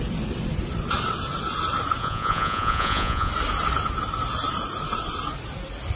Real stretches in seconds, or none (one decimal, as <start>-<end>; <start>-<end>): 0.0-2.0; 3.3-6.0

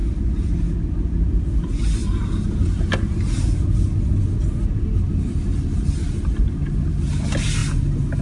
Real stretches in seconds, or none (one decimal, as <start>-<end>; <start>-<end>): 0.0-8.2

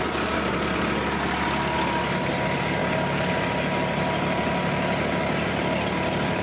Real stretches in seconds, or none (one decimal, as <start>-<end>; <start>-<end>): 0.0-2.8; 3.4-6.4

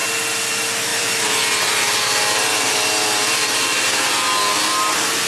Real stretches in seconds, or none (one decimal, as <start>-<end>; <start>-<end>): 0.0-0.9; 4.1-5.3

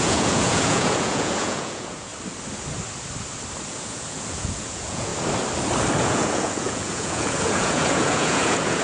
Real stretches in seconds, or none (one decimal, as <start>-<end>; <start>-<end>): 2.1-3.7; 5.1-6.0